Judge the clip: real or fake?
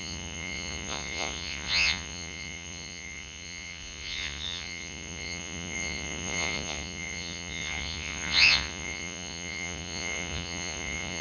fake